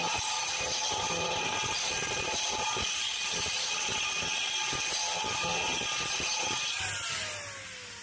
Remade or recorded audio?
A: recorded